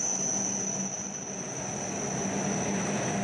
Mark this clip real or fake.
real